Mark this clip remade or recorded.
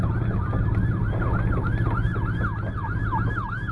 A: recorded